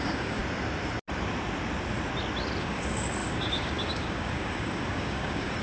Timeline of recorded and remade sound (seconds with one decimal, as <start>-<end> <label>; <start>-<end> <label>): 0.0-0.4 remade; 0.4-2.6 recorded; 2.6-5.6 remade